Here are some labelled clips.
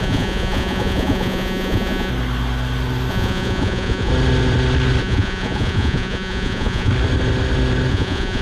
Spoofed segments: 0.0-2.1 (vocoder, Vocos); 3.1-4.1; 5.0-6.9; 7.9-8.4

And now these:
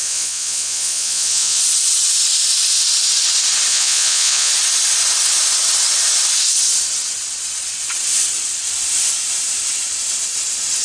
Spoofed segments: 0.0-1.6 (vocoder, Vocos); 3.7-4.5

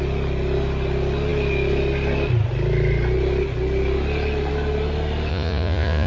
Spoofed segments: 5.3-6.1 (vocoder, Vocos)